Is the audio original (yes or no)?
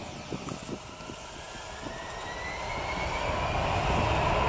yes